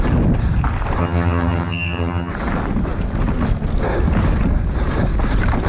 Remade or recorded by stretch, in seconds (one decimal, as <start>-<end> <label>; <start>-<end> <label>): 0.0-1.0 recorded; 1.0-2.3 remade; 2.3-5.7 recorded